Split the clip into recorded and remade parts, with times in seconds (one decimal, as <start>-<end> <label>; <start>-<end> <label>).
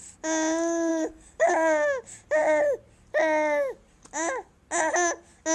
0.0-0.9 recorded; 0.9-1.5 remade; 1.5-5.5 recorded